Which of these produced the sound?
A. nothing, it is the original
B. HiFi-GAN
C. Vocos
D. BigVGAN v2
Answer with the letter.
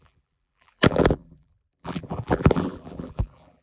D